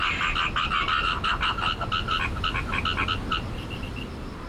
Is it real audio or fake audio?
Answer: real